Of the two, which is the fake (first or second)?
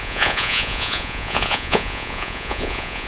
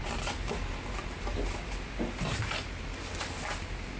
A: first